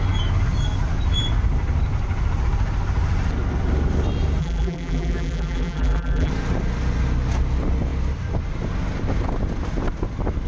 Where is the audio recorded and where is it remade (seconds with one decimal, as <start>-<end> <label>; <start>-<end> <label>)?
0.0-4.4 recorded; 4.4-6.3 remade; 6.3-10.5 recorded